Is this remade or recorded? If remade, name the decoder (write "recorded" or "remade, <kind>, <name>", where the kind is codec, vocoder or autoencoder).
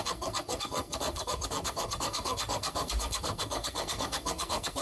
remade, codec, SNAC